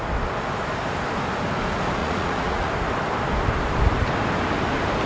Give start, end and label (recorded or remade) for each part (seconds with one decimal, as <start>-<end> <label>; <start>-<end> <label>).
0.0-2.0 recorded; 2.0-2.7 remade; 2.7-5.1 recorded